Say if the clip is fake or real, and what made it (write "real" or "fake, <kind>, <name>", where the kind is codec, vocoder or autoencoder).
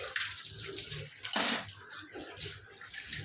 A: real